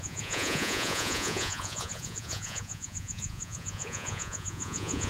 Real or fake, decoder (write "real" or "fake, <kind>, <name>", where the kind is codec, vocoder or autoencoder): fake, vocoder, Vocos